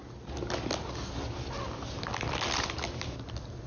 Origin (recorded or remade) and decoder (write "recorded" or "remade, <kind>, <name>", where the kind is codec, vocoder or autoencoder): recorded